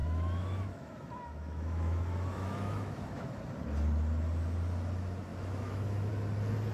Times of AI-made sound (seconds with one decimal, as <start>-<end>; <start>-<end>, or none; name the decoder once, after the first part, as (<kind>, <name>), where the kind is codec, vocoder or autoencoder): 0.0-3.3 (autoencoder, DAC-VAE); 5.3-6.1